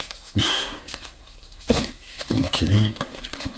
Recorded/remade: remade